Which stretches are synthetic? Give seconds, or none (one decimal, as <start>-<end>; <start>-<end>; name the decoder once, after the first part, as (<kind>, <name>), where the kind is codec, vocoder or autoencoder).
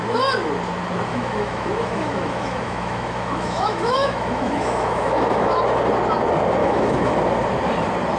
1.1-5.6 (autoencoder, DAC-VAE); 6.6-7.2